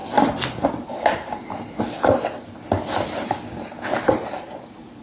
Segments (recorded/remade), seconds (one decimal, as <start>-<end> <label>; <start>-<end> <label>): 0.0-5.0 recorded

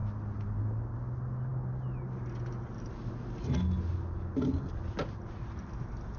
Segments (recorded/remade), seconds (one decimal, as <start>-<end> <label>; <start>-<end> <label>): 0.0-6.2 recorded

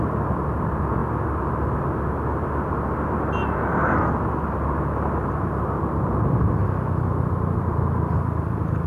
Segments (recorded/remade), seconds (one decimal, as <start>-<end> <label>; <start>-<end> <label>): 0.0-1.0 remade; 1.0-5.4 recorded; 5.4-6.6 remade; 6.6-7.2 recorded; 7.2-8.9 remade

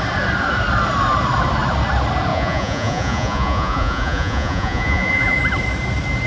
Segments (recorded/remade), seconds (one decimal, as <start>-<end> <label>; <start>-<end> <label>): 0.0-2.3 recorded; 2.3-5.4 remade; 5.4-6.3 recorded

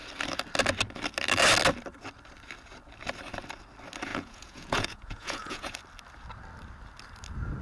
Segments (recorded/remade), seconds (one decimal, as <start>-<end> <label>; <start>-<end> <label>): 0.0-4.1 recorded; 4.1-5.7 remade; 5.7-7.6 recorded

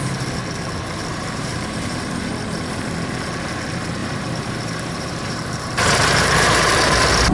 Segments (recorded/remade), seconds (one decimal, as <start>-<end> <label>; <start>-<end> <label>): 0.0-1.1 recorded; 1.1-2.3 remade; 2.3-4.0 recorded; 4.0-6.7 remade; 6.7-7.3 recorded

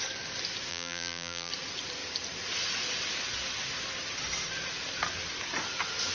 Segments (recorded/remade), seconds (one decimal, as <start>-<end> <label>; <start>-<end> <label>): 0.0-0.7 recorded; 0.7-1.5 remade; 1.5-6.1 recorded